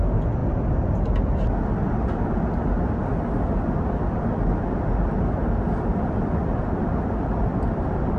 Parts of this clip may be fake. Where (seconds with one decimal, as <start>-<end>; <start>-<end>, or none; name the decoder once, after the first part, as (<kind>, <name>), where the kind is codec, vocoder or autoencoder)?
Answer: 0.0-0.4 (vocoder, BigVGAN v2); 3.8-8.2